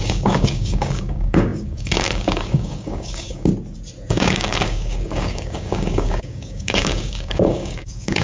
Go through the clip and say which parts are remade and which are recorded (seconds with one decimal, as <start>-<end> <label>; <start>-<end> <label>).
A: 0.0-3.5 remade; 3.5-4.1 recorded; 4.1-8.2 remade